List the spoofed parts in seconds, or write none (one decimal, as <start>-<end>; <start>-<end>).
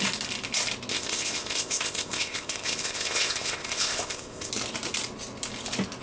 0.9-4.5